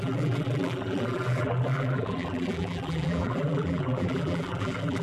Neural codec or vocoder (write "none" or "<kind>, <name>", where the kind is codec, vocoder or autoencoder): vocoder, BigVGAN v2